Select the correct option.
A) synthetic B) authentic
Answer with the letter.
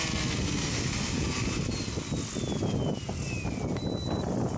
B